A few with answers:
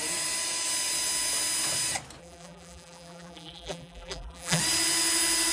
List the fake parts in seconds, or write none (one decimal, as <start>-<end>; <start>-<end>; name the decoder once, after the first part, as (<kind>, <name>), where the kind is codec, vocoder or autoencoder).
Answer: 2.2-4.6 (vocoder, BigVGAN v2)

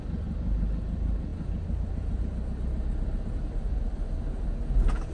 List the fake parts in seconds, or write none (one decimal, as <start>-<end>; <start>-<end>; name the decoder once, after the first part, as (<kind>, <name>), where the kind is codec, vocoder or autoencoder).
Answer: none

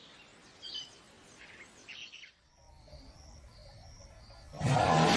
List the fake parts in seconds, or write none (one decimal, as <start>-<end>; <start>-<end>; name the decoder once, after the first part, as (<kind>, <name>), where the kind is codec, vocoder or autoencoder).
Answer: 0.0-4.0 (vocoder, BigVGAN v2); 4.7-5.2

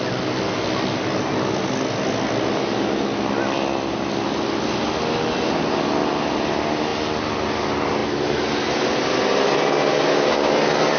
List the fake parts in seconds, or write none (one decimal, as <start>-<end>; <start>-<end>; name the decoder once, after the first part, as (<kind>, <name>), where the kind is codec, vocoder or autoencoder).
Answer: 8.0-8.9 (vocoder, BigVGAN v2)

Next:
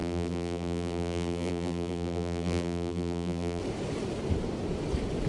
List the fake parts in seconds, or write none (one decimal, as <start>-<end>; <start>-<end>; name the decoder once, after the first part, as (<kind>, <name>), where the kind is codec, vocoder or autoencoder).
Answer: 0.0-3.6 (vocoder, BigVGAN v2)

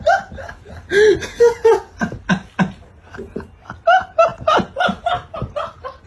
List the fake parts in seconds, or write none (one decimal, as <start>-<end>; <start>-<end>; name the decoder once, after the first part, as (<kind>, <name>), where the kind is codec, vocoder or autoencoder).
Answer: none

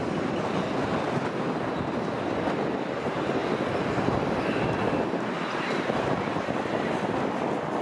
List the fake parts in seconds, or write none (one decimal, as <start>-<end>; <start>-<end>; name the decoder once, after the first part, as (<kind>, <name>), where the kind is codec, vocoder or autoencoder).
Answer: none